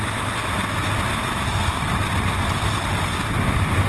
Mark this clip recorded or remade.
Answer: recorded